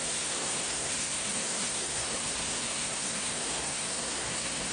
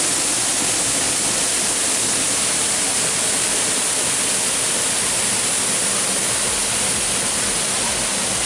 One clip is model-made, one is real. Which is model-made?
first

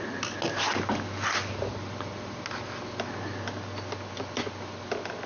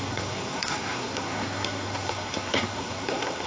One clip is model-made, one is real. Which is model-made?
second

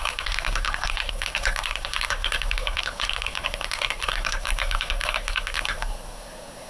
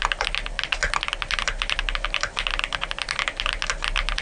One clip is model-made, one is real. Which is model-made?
first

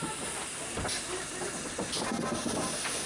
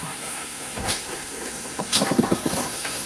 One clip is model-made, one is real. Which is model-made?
second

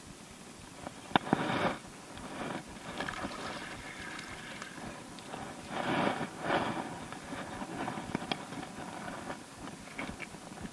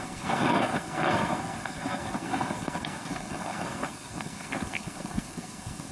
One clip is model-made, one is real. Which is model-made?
second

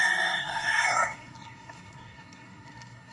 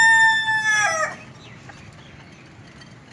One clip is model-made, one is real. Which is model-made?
first